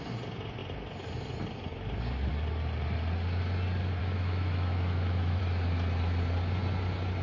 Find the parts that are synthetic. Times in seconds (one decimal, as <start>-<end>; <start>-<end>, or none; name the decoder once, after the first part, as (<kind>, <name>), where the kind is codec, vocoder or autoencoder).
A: 4.0-5.4 (autoencoder, DAC-VAE)